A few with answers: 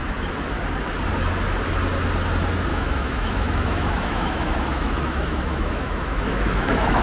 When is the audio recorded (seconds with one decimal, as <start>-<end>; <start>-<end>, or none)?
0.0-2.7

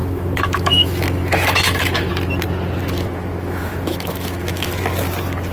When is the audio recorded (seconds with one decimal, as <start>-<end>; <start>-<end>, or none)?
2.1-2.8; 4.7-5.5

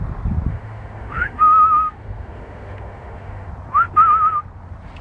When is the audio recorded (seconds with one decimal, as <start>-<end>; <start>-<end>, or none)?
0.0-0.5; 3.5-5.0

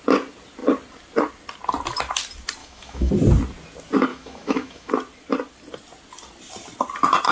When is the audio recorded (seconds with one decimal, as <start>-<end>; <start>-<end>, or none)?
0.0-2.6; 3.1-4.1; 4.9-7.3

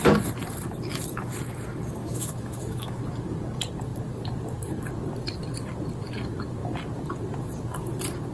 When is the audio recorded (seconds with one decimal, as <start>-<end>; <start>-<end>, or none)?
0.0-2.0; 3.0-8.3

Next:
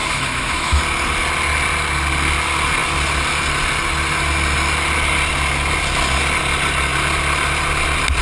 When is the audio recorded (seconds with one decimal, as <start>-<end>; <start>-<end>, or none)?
0.8-8.2

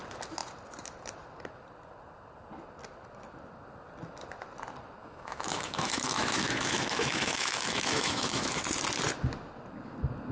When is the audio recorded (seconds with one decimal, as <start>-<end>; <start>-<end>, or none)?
0.0-5.0; 8.6-10.3